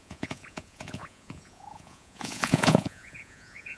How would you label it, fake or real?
fake